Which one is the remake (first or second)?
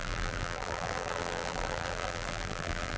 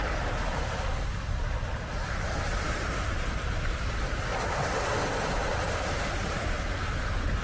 first